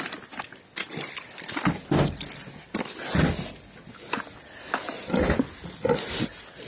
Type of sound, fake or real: real